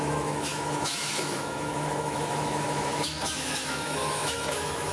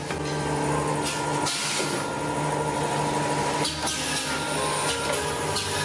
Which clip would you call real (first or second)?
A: second